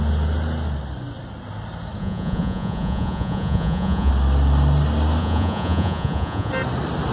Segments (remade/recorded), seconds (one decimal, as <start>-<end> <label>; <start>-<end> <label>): 0.0-2.0 recorded; 2.0-4.1 remade; 4.1-5.2 recorded; 5.2-6.5 remade; 6.5-7.1 recorded